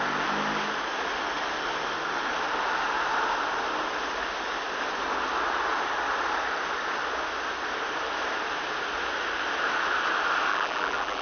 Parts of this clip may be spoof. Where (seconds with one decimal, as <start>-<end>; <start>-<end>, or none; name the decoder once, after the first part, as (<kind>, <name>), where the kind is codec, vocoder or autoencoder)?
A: 10.5-11.2 (vocoder, BigVGAN v2)